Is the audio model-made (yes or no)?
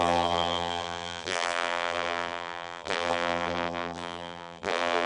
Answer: yes